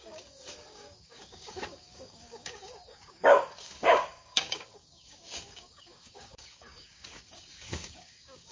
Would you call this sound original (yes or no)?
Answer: no